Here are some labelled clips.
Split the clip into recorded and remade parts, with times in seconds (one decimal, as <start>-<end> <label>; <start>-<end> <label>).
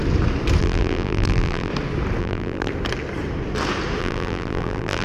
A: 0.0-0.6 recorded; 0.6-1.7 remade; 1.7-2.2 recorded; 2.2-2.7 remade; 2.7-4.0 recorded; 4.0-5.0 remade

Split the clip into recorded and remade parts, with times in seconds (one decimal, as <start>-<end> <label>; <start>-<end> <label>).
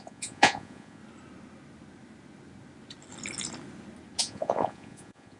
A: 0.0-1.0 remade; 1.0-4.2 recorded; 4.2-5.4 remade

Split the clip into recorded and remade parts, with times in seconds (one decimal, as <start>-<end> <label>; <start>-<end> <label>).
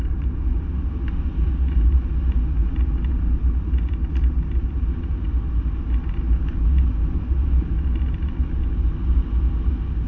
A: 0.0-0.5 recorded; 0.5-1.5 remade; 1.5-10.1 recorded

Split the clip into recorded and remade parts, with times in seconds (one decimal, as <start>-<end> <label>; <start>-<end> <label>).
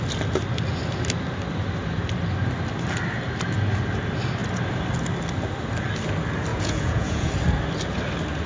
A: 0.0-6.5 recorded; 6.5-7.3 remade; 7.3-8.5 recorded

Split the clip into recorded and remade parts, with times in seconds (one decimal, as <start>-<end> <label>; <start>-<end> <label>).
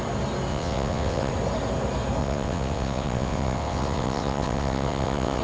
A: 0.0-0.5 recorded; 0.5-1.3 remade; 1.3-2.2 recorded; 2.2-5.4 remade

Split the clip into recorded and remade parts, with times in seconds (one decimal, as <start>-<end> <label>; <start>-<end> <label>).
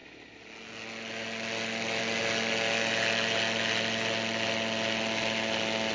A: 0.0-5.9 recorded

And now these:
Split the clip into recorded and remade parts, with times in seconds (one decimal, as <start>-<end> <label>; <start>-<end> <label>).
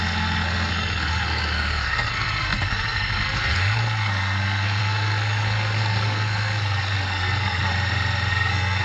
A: 0.0-7.6 remade; 7.6-8.3 recorded; 8.3-8.8 remade